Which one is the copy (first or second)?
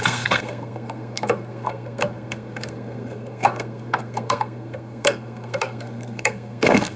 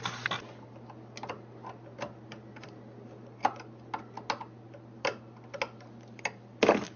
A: first